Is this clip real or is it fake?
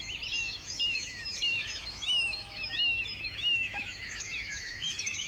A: fake